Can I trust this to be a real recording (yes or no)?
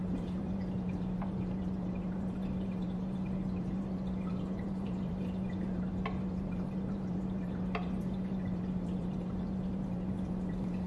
no